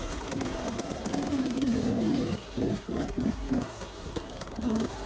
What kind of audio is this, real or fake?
fake